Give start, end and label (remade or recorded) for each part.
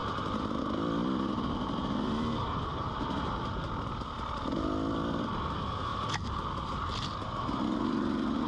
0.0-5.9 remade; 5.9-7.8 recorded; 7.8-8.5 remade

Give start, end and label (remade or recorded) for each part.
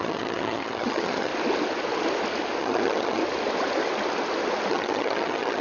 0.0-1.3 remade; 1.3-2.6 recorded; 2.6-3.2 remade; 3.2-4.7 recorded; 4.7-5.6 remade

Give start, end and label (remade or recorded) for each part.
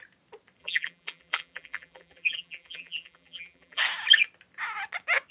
0.0-0.6 recorded; 0.6-3.8 remade; 3.8-5.3 recorded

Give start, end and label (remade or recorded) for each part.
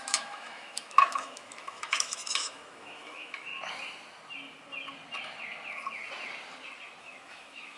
0.0-3.5 remade; 3.5-7.0 recorded; 7.0-7.8 remade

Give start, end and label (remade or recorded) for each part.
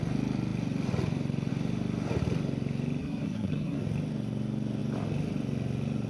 0.0-3.0 recorded; 3.0-3.8 remade; 3.8-6.1 recorded